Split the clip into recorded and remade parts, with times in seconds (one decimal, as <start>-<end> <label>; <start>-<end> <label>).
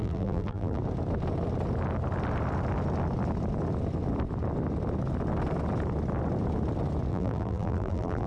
0.0-0.8 remade; 0.8-7.1 recorded; 7.1-8.3 remade